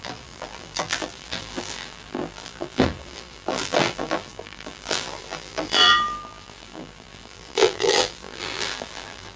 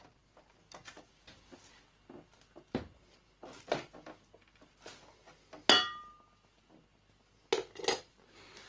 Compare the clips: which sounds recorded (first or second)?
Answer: second